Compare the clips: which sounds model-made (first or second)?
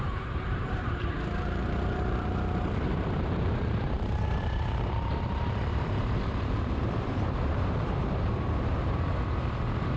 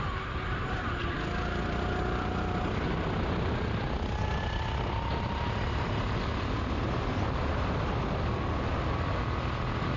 first